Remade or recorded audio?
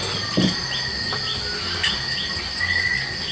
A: recorded